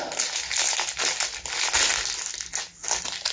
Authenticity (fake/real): real